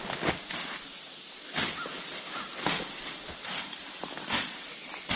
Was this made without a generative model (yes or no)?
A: yes